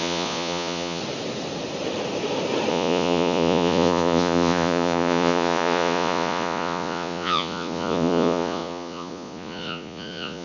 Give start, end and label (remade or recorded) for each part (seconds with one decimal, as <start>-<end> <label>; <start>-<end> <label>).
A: 0.0-1.0 remade; 1.0-2.7 recorded; 2.7-10.4 remade